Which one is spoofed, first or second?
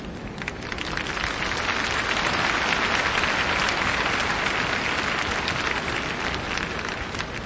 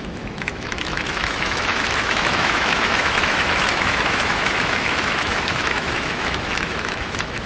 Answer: second